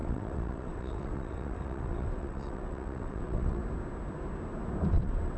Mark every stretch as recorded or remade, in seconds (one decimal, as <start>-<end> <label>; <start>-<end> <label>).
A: 0.0-3.6 remade; 3.6-4.9 recorded; 4.9-5.4 remade